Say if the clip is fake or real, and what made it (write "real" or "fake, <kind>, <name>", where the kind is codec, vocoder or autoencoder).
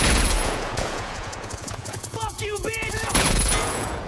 fake, vocoder, Vocos